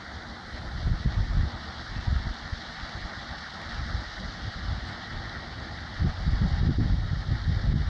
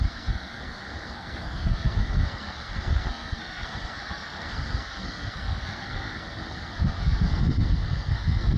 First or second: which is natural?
first